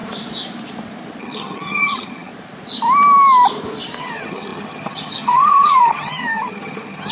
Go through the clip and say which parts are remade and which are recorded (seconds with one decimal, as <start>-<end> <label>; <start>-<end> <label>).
0.0-1.2 recorded; 1.2-2.3 remade; 2.3-4.0 recorded; 4.0-7.1 remade